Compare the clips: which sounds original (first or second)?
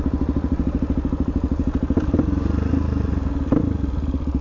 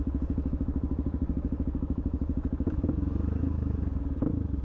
first